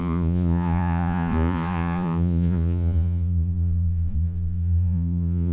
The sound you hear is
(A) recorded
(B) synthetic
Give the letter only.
B